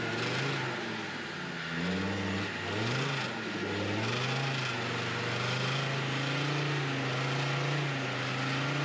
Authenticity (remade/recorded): recorded